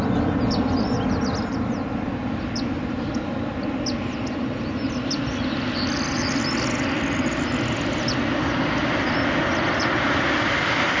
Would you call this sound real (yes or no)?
yes